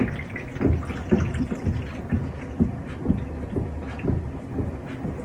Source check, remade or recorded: recorded